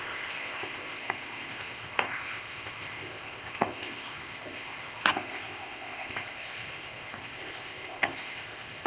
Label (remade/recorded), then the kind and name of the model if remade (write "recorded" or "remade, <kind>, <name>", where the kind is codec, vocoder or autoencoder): remade, codec, ZipCodec